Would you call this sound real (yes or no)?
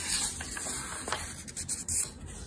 yes